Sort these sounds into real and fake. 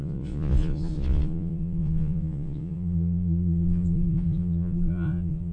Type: fake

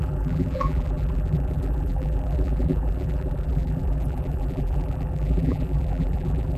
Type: fake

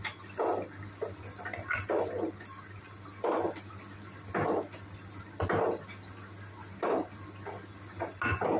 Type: real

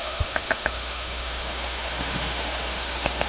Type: fake